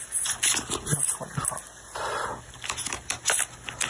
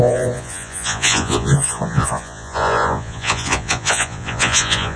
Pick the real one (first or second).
first